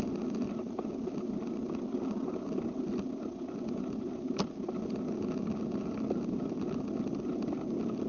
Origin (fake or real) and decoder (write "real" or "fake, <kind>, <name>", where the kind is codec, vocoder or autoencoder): real